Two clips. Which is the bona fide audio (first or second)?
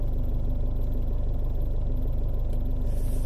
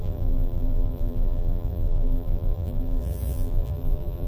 first